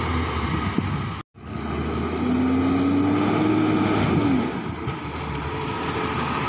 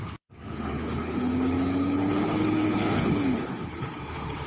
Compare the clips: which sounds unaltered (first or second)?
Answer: first